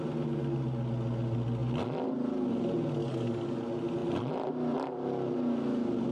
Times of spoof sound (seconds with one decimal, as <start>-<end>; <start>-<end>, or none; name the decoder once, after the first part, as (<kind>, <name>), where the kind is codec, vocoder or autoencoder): 3.0-3.6 (codec, DAC)